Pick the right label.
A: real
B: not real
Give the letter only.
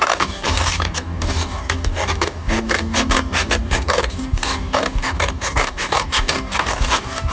B